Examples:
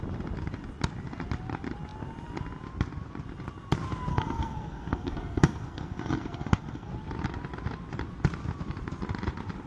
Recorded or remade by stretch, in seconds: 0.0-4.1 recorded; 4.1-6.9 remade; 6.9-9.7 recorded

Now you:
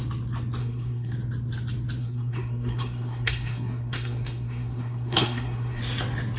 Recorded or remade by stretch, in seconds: 0.0-0.6 recorded; 0.6-1.1 remade; 1.1-2.0 recorded; 2.0-5.8 remade; 5.8-6.4 recorded